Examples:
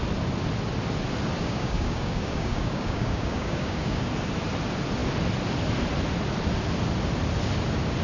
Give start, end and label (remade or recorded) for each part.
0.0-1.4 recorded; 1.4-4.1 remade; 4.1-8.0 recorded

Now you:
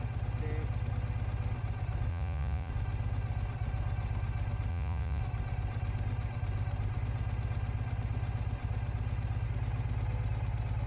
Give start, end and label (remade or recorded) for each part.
0.0-2.1 recorded; 2.1-2.7 remade; 2.7-4.7 recorded; 4.7-5.2 remade; 5.2-10.9 recorded

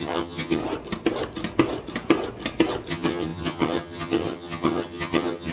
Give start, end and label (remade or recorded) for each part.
0.0-0.6 remade; 0.6-2.9 recorded; 2.9-5.5 remade

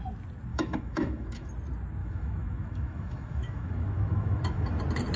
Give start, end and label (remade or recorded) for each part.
0.0-0.5 recorded; 0.5-1.5 remade; 1.5-2.0 recorded; 2.0-4.8 remade; 4.8-5.2 recorded